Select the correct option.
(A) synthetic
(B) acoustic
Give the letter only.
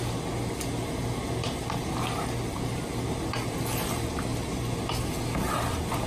B